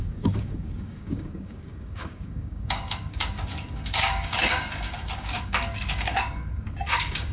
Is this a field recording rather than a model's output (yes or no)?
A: no